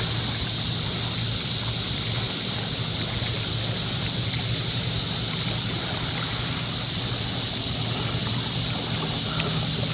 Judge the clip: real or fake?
real